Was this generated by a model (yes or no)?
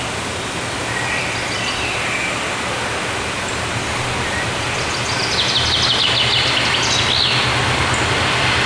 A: no